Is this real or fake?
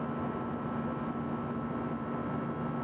real